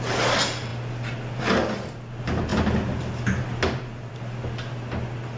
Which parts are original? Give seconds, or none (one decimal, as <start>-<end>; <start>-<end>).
0.0-5.4